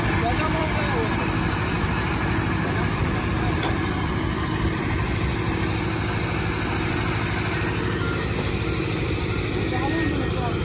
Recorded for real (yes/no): no